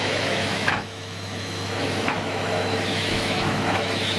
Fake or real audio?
fake